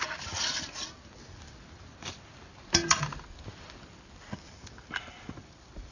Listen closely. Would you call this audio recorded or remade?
recorded